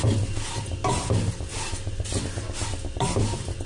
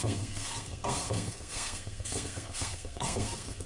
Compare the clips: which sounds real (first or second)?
first